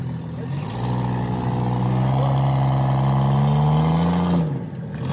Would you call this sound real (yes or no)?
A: yes